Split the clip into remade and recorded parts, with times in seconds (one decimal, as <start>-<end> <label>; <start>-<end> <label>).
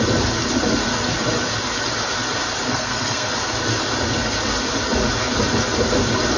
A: 0.0-2.7 recorded; 2.7-3.3 remade; 3.3-6.4 recorded